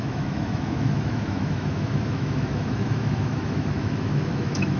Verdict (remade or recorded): remade